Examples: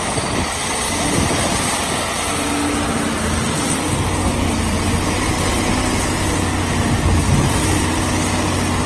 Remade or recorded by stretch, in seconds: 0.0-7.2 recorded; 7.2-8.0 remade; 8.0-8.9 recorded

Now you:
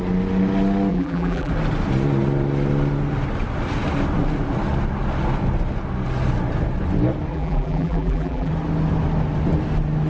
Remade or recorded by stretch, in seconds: 0.0-0.9 recorded; 0.9-1.5 remade; 1.5-7.3 recorded; 7.3-8.5 remade; 8.5-10.1 recorded

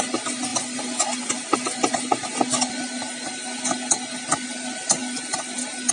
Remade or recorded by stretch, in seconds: 0.0-0.5 recorded; 0.5-1.9 remade; 1.9-5.0 recorded; 5.0-5.9 remade